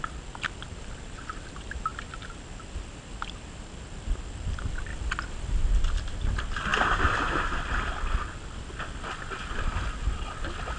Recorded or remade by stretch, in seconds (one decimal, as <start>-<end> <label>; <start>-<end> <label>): 0.0-1.9 recorded; 1.9-3.6 remade; 3.6-4.9 recorded; 4.9-5.6 remade; 5.6-10.8 recorded